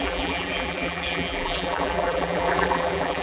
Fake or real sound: fake